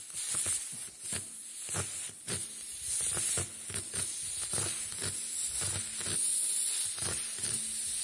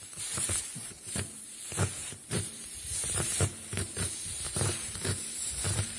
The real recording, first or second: first